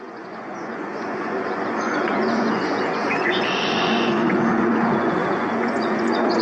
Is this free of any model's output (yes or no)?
no